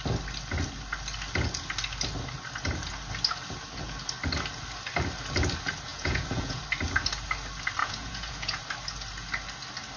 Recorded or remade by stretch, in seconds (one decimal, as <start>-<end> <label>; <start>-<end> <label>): 0.0-5.9 recorded; 5.9-6.6 remade; 6.6-7.8 recorded; 7.8-8.6 remade; 8.6-10.0 recorded